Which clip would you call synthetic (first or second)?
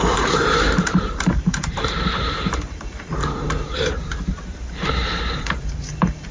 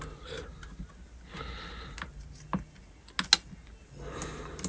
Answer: first